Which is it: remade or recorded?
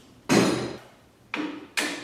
recorded